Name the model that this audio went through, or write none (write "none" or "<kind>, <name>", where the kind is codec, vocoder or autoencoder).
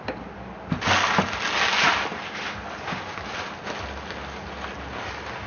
none